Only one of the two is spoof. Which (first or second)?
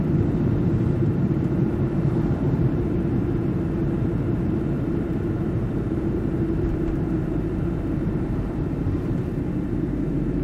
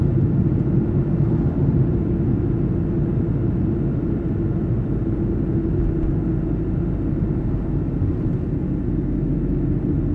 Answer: first